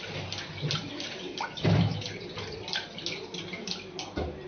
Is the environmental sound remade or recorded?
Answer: recorded